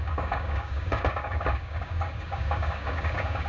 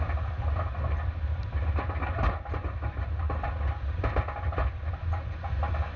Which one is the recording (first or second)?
second